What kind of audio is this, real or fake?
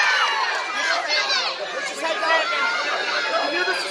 real